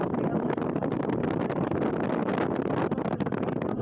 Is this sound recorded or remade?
recorded